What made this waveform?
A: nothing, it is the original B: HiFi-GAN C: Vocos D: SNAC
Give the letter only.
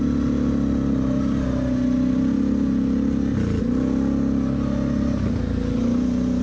A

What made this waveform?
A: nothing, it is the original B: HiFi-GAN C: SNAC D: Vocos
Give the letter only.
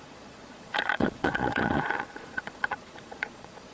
D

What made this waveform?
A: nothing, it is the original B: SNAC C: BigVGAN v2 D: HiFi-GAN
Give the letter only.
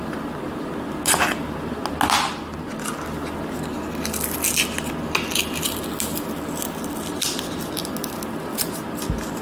A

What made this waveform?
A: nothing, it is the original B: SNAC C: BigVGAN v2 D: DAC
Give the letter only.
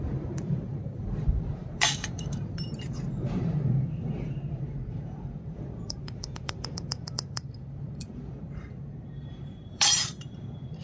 C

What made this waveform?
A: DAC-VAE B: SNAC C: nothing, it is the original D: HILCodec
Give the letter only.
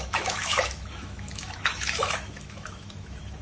A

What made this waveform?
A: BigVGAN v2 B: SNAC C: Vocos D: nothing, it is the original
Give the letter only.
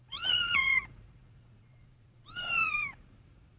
C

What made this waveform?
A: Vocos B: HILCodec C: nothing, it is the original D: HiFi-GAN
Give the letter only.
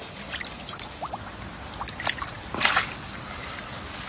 C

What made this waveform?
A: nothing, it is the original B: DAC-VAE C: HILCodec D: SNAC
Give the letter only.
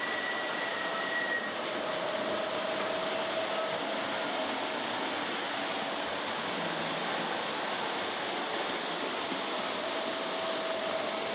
A